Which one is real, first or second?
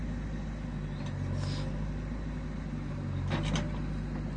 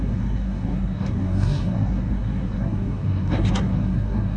first